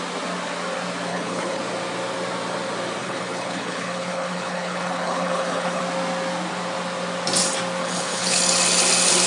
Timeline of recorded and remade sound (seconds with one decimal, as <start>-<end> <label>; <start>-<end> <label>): 0.0-1.1 recorded; 1.1-1.6 remade; 1.6-3.0 recorded; 3.0-5.8 remade; 5.8-7.8 recorded; 7.8-8.4 remade; 8.4-9.3 recorded